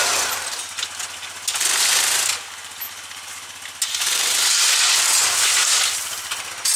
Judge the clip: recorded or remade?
recorded